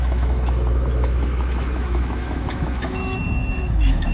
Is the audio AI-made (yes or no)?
yes